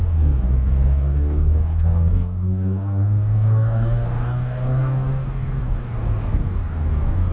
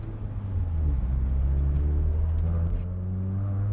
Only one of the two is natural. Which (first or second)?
second